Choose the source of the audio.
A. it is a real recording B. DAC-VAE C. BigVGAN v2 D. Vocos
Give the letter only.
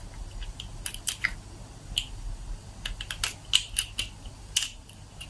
A